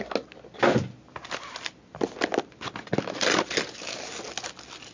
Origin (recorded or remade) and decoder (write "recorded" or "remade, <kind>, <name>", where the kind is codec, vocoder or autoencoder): recorded